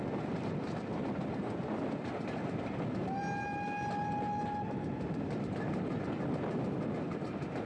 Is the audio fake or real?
real